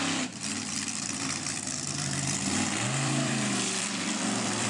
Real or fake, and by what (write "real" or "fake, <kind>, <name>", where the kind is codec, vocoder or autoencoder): fake, vocoder, BigVGAN v2